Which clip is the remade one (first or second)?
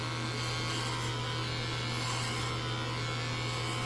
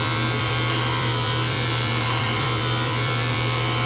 second